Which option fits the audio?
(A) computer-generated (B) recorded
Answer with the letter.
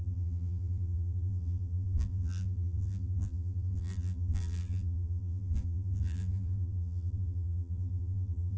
A